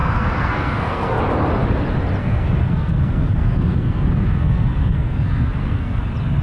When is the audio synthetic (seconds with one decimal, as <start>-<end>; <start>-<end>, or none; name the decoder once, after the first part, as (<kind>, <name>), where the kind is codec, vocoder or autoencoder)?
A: 0.0-1.2 (codec, SNAC); 2.2-6.0